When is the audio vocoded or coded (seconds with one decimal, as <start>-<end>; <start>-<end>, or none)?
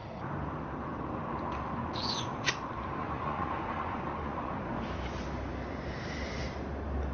1.8-2.5; 3.0-4.5